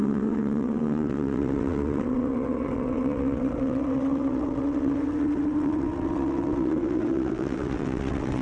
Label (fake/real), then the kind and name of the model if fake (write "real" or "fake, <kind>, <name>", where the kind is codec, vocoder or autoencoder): fake, vocoder, WaveNeXt